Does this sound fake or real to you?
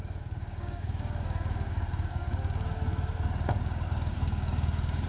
fake